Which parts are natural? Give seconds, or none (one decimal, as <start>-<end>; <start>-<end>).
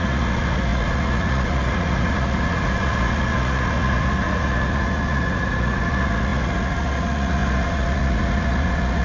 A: none